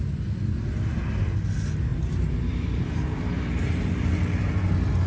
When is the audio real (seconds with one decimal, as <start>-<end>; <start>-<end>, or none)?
0.0-1.9; 3.9-5.1